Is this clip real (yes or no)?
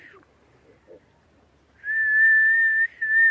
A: yes